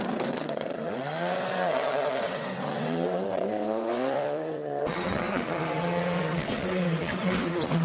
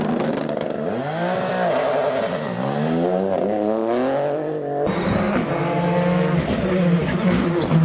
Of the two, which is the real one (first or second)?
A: second